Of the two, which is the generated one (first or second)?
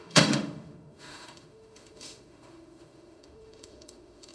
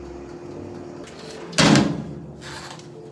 first